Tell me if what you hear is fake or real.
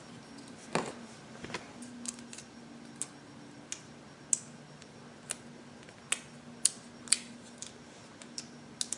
real